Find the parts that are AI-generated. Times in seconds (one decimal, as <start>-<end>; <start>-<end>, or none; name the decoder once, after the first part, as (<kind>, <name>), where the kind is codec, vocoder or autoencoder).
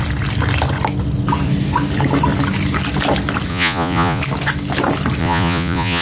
3.5-4.2 (vocoder, Vocos); 5.2-6.0